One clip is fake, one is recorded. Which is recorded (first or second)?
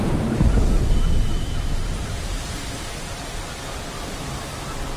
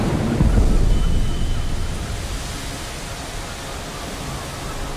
second